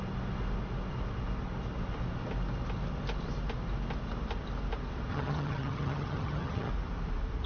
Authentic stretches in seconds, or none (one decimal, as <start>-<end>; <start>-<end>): 0.0-5.1; 6.7-7.5